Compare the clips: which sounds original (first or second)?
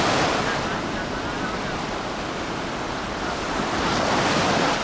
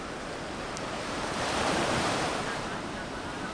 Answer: first